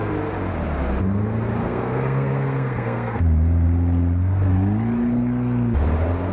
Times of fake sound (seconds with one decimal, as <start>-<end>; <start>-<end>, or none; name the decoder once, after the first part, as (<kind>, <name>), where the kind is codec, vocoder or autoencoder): 1.6-3.2 (codec, SNAC)